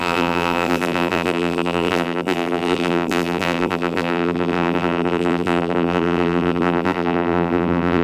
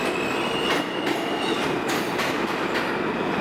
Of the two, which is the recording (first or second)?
second